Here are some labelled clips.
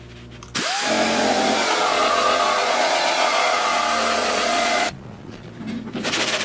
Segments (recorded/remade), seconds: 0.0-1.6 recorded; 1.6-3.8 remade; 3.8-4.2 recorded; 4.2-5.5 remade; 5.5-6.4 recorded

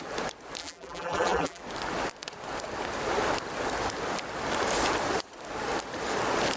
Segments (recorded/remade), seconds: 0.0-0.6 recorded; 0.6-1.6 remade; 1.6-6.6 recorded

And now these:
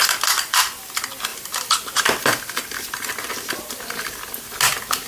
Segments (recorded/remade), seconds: 0.0-1.3 recorded; 1.3-4.4 remade; 4.4-5.1 recorded

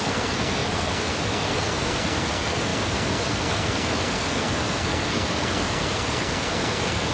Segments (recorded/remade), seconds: 0.0-7.1 remade

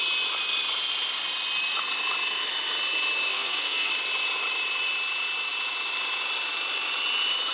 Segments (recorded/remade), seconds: 0.0-3.3 recorded; 3.3-3.9 remade; 3.9-7.5 recorded